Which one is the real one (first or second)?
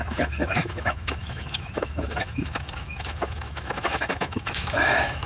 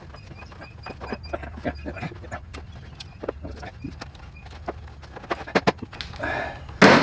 second